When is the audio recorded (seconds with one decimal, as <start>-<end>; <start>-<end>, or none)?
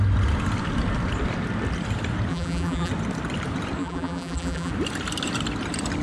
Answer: 0.0-2.3; 2.9-3.8; 4.7-6.0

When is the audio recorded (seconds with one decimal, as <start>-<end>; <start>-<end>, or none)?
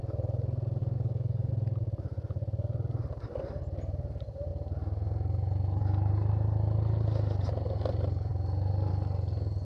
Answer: 0.0-0.8; 1.5-9.6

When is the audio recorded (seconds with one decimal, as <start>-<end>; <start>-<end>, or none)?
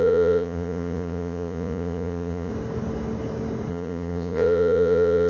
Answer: 2.5-3.7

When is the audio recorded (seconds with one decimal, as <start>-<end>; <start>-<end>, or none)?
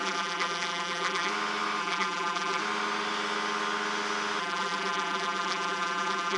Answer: 1.3-1.8; 2.6-4.4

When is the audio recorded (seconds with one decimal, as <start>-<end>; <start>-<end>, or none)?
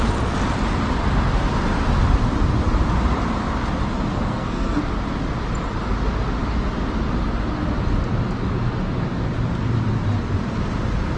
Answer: 0.0-4.1; 4.8-11.2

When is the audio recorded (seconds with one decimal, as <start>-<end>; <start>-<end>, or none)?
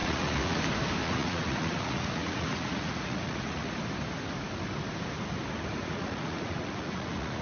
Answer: 0.6-1.0; 3.7-5.8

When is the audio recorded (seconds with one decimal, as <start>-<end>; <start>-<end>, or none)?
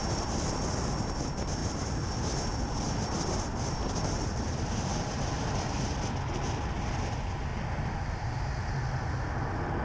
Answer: 0.0-1.6; 5.8-7.5; 9.3-9.8